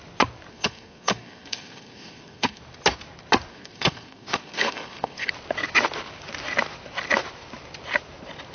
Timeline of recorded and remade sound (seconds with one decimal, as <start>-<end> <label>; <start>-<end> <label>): 0.0-0.5 recorded; 0.5-2.6 remade; 2.6-3.5 recorded; 3.5-5.3 remade; 5.3-8.5 recorded